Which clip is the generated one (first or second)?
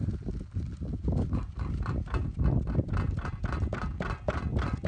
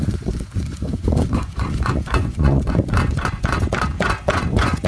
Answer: second